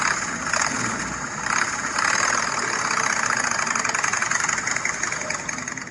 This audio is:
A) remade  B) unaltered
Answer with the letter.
B